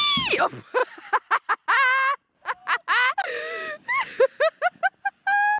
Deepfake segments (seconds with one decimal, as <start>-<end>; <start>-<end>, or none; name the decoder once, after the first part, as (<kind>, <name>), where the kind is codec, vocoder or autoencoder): none